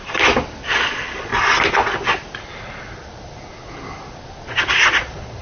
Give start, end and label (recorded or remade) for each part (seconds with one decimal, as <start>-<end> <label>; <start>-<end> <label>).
0.0-0.7 recorded; 0.7-1.3 remade; 1.3-4.4 recorded; 4.4-5.4 remade